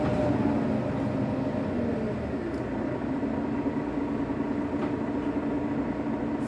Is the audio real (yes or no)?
yes